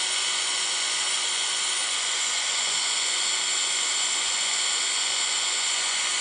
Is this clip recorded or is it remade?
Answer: remade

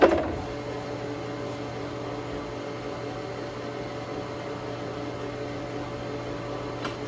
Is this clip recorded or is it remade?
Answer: recorded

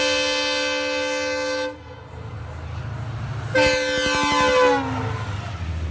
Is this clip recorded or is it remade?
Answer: recorded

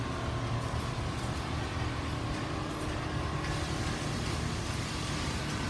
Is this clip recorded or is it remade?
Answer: recorded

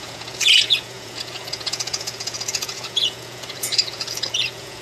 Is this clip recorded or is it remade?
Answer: remade